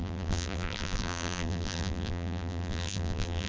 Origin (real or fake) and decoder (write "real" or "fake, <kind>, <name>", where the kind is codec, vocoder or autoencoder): fake, vocoder, BigVGAN v2